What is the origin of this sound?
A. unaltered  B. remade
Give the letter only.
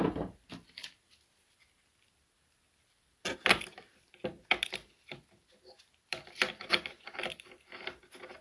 A